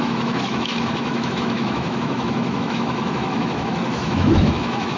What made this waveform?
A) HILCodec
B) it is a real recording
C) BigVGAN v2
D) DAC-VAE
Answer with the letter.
D